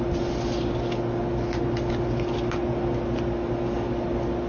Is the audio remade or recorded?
recorded